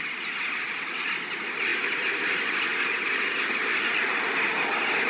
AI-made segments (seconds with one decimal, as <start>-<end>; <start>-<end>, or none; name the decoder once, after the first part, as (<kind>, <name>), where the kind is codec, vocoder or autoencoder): none